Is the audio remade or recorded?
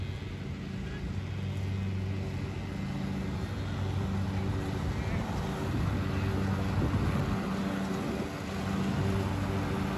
recorded